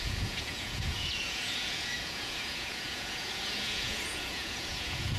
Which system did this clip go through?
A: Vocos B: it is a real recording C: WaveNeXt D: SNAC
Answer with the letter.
A